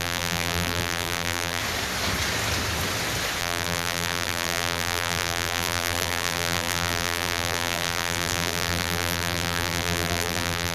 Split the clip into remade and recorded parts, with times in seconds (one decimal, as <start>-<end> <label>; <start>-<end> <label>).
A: 0.0-1.6 remade; 1.6-3.4 recorded; 3.4-10.7 remade